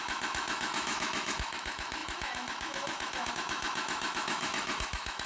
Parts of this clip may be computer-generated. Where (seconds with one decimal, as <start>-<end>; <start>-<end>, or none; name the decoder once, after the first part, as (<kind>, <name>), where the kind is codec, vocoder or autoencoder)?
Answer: 0.0-5.3 (autoencoder, DAC-VAE)